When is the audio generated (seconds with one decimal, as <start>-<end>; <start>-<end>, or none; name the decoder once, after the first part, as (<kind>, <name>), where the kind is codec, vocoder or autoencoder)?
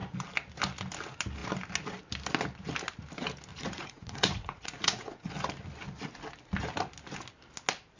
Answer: 3.5-5.3 (vocoder, Vocos)